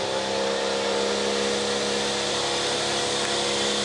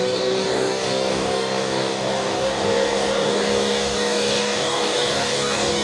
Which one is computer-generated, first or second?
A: second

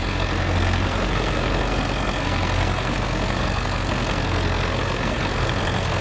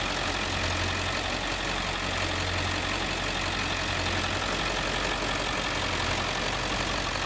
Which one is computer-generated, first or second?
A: first